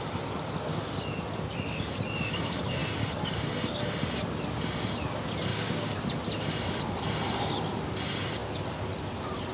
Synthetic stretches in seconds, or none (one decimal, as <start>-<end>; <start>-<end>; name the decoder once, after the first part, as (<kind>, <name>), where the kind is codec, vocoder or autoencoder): 5.5-6.0 (codec, DAC)